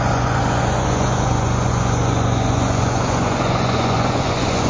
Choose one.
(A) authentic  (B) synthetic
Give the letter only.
B